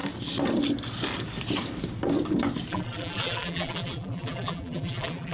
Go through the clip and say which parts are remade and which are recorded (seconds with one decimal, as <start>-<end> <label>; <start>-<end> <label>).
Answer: 0.0-2.7 recorded; 2.7-5.3 remade